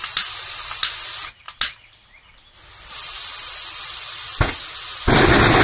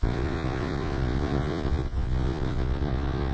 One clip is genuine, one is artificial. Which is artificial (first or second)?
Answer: second